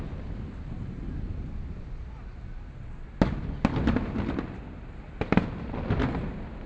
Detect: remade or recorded recorded